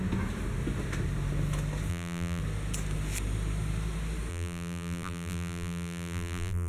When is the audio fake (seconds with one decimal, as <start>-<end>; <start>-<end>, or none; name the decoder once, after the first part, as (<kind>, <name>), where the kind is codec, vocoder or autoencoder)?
1.9-2.4 (vocoder, BigVGAN v2); 4.3-6.7